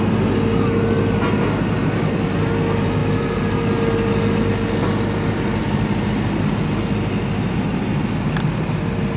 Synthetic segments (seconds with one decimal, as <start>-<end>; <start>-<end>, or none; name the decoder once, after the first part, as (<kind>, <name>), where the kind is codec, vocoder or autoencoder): none